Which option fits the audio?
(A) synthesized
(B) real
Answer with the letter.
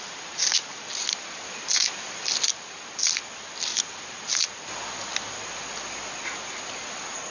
B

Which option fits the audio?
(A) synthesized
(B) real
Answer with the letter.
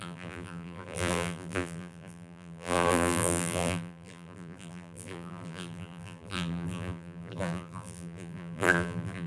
A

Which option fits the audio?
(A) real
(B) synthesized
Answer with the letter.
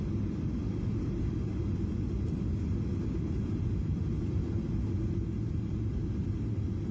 A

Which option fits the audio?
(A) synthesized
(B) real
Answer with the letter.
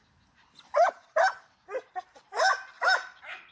B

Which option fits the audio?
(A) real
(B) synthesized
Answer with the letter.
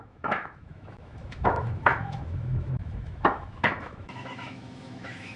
B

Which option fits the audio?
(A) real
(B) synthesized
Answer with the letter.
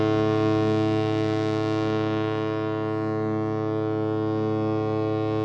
A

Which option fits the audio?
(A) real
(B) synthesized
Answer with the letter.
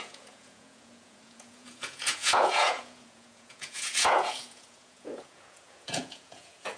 B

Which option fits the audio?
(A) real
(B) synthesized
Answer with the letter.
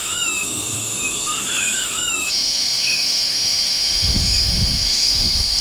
B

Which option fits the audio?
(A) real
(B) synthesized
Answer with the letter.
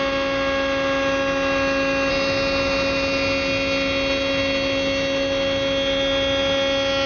A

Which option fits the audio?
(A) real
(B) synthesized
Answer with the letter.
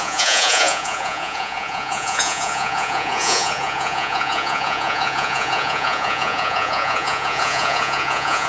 B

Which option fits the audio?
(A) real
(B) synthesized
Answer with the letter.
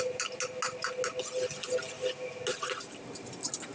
A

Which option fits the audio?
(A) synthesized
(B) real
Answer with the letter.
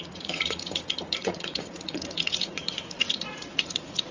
A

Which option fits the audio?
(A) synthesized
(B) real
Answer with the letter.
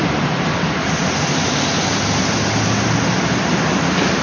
B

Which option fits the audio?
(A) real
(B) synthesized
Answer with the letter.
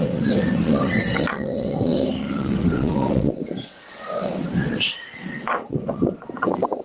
B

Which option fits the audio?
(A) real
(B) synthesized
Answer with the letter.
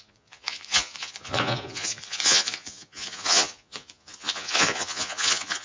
B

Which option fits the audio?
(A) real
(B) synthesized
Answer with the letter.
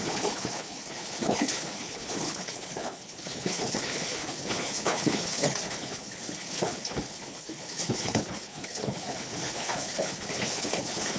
B